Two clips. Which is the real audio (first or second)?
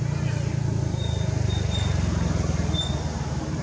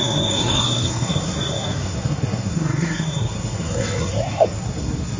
first